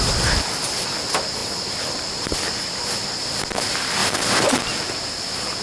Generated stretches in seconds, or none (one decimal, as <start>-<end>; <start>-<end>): none